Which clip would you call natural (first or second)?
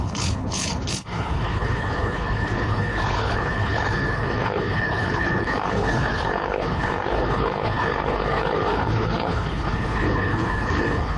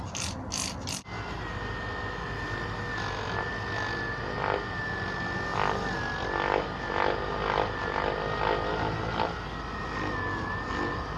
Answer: second